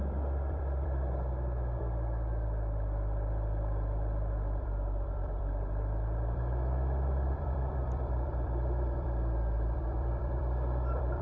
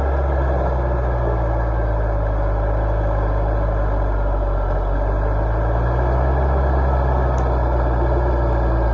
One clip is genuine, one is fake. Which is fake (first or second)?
first